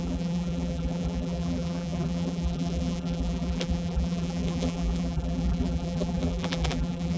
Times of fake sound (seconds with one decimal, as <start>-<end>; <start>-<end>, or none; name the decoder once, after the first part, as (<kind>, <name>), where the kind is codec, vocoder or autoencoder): 0.0-7.2 (vocoder, BigVGAN v2)